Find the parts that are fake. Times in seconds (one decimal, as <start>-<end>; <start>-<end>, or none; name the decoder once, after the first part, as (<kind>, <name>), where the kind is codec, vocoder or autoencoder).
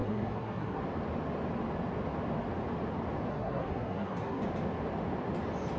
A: 0.0-0.8 (codec, SNAC); 3.3-4.4